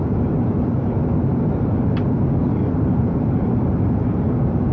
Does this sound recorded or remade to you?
recorded